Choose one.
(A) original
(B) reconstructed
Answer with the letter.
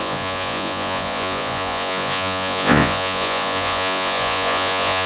B